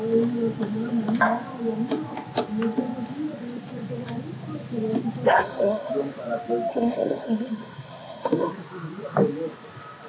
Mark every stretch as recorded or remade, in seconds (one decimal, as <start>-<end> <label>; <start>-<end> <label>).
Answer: 0.0-5.3 recorded; 5.3-5.9 remade; 5.9-6.7 recorded; 6.7-8.5 remade; 8.5-10.1 recorded